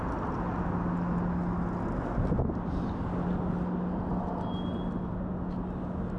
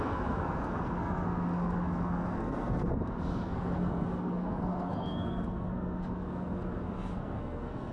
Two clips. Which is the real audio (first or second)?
first